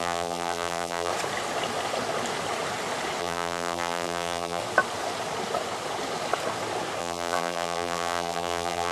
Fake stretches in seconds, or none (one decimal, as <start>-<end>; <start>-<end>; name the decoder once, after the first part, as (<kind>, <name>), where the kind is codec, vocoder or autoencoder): 0.0-1.1 (vocoder, BigVGAN v2); 3.2-4.6; 7.0-8.9